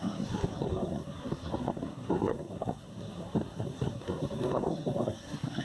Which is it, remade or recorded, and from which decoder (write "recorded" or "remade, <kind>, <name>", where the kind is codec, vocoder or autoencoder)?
remade, codec, SNAC